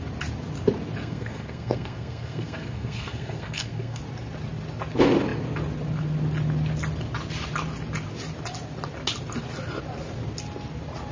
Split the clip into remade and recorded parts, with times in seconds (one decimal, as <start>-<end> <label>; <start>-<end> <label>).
0.0-1.0 recorded; 1.0-4.0 remade; 4.0-11.1 recorded